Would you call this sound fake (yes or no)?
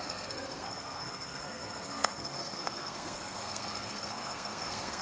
yes